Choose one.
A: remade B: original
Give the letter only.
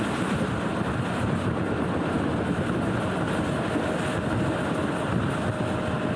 B